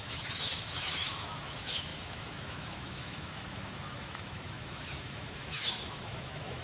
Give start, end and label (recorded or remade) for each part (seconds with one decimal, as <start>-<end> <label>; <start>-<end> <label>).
0.0-6.6 remade